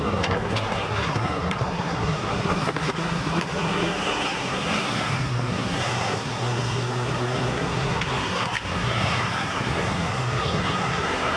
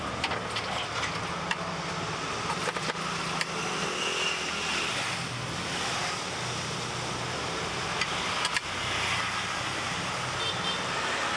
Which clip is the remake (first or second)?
first